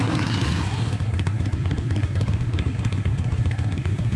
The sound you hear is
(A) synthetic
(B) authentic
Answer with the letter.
A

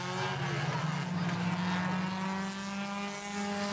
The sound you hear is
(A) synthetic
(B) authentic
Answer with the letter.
B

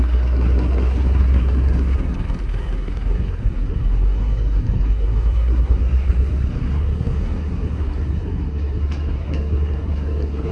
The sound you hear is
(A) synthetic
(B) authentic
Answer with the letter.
A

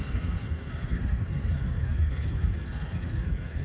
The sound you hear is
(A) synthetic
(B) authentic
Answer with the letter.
A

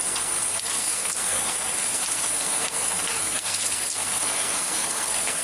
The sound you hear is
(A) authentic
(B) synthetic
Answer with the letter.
B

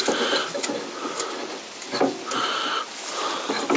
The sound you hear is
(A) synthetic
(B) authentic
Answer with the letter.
B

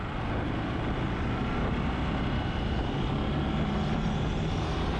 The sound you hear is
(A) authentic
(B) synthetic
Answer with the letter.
A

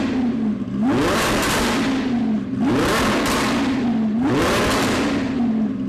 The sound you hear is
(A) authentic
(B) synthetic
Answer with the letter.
A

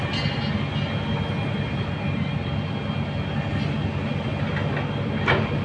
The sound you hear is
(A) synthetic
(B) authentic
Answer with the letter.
B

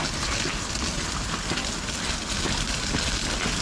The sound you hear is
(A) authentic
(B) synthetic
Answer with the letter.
A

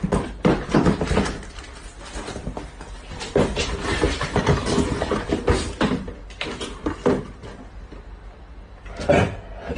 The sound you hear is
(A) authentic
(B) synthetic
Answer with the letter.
A